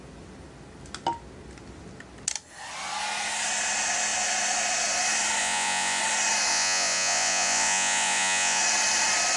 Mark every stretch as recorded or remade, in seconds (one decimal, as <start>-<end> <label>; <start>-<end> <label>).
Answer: 0.0-5.4 recorded; 5.4-6.0 remade; 6.0-6.5 recorded; 6.5-8.6 remade; 8.6-9.4 recorded